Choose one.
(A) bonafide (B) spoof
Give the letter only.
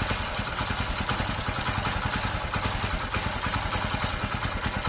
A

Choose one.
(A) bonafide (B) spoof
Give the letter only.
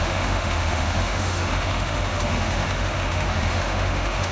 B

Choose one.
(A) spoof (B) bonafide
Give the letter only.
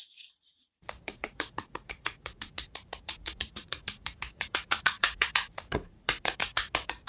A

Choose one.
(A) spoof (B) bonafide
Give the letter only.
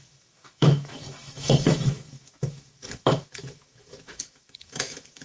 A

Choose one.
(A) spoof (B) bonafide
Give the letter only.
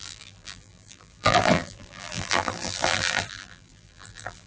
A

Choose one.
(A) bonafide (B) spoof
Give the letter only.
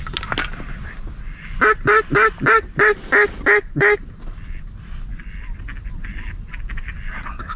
A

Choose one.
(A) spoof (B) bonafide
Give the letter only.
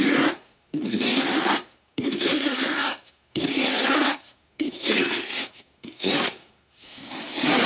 A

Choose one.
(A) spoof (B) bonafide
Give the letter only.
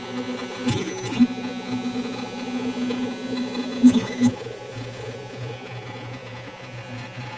A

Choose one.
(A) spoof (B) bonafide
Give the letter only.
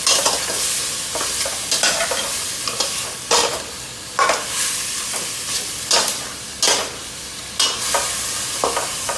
B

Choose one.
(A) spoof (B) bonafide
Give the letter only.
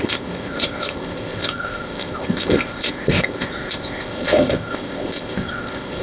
A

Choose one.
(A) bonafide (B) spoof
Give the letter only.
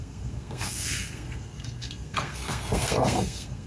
B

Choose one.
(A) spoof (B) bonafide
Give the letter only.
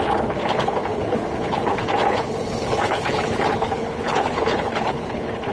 A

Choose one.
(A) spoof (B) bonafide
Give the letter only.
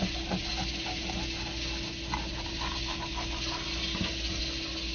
B